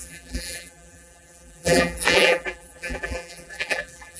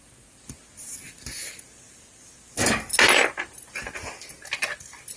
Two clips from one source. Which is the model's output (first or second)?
first